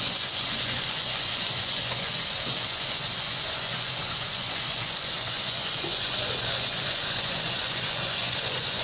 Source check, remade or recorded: remade